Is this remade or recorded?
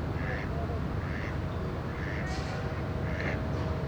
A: recorded